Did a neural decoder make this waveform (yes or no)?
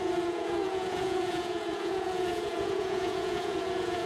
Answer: yes